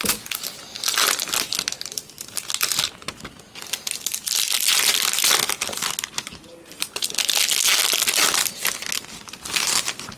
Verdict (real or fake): real